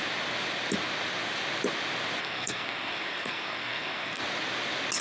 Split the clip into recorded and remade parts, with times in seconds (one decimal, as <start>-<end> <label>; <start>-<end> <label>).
0.0-2.2 recorded; 2.2-4.2 remade; 4.2-5.0 recorded

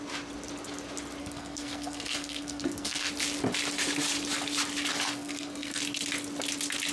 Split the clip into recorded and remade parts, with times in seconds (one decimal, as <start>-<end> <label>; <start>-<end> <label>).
0.0-1.2 recorded; 1.2-3.1 remade; 3.1-4.9 recorded; 4.9-5.8 remade; 5.8-6.9 recorded

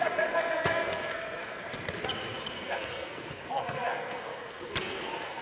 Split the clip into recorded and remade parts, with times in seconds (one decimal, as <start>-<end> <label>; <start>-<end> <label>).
0.0-1.6 remade; 1.6-2.5 recorded; 2.5-5.4 remade